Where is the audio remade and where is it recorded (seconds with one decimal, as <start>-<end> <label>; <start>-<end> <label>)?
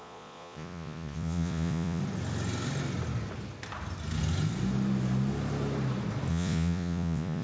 0.0-2.0 remade; 2.0-6.3 recorded; 6.3-7.4 remade